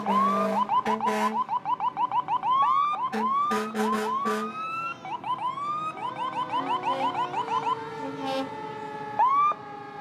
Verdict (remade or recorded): recorded